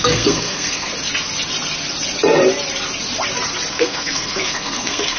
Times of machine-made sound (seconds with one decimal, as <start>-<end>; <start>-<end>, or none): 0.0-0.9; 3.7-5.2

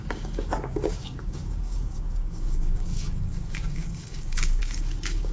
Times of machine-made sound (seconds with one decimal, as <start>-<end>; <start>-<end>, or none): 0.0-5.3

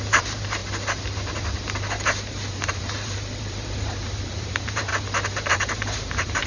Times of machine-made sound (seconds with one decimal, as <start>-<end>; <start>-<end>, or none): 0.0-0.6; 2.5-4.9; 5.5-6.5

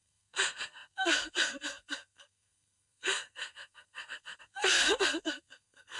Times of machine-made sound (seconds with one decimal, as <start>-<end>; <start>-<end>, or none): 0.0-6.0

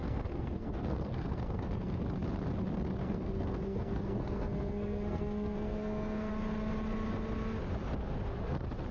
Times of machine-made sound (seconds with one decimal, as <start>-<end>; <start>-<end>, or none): 0.0-2.0; 3.0-6.3

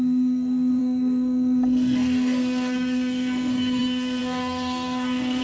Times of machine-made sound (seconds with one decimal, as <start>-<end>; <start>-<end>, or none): 0.0-5.4